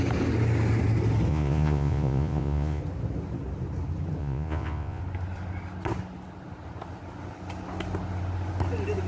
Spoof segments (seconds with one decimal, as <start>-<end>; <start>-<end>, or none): 1.3-2.8; 4.2-5.0